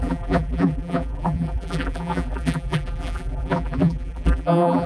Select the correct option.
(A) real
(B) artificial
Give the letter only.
B